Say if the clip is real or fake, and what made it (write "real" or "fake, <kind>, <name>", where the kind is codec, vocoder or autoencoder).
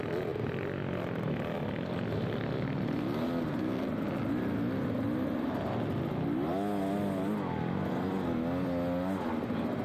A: real